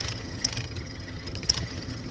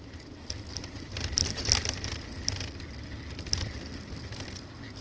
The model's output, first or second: first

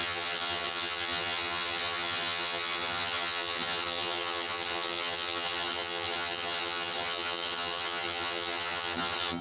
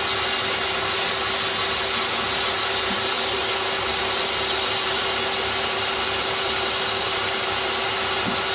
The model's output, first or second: first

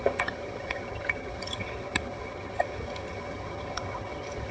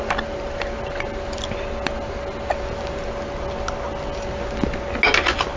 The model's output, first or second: first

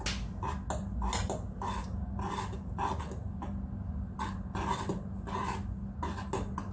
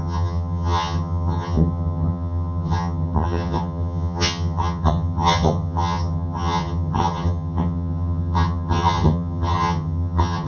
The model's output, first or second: second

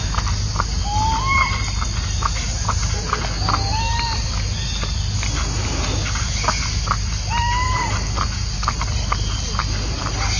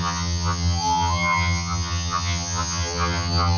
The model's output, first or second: second